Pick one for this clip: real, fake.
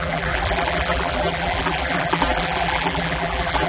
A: fake